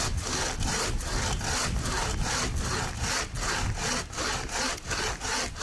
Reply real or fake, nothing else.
real